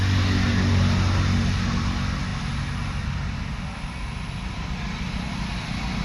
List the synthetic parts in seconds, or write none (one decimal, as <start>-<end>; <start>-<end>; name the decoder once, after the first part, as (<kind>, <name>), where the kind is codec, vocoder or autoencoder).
none